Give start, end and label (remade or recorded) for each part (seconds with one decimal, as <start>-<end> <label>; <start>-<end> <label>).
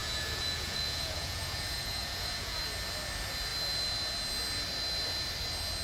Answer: 0.0-2.6 remade; 2.6-5.8 recorded